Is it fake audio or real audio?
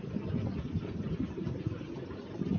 real